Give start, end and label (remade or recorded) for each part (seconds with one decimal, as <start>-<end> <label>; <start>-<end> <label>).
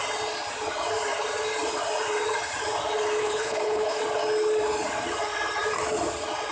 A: 0.0-3.2 recorded; 3.2-4.0 remade; 4.0-6.5 recorded